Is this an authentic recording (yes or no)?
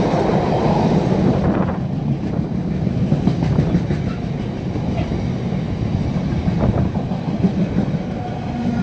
yes